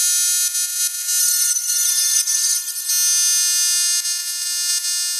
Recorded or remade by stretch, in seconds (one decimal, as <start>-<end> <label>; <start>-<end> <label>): 0.0-1.2 recorded; 1.2-2.9 remade; 2.9-5.2 recorded